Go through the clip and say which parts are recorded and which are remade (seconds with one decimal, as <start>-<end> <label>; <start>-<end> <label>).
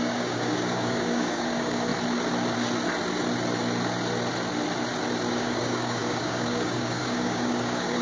0.0-1.9 remade; 1.9-5.3 recorded; 5.3-8.0 remade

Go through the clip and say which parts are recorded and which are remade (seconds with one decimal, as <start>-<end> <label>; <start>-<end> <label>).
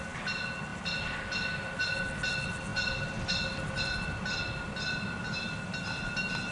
0.0-6.5 recorded